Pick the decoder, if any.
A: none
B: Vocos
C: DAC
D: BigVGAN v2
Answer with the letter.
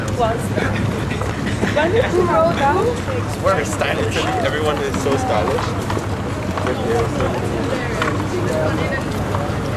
A